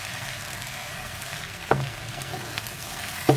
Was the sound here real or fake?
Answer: fake